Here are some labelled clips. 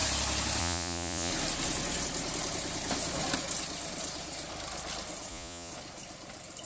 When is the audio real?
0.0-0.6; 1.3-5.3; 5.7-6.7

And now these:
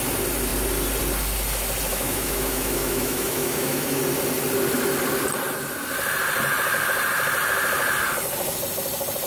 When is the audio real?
0.0-1.9; 4.0-9.3

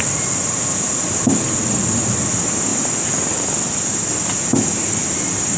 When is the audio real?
0.0-5.6

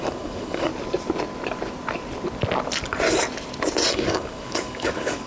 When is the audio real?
0.7-3.9

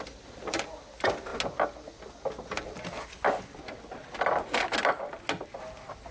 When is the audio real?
0.0-6.1